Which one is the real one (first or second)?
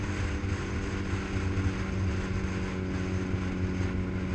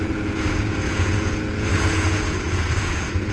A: first